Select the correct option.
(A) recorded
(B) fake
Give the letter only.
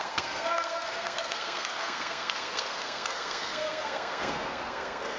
B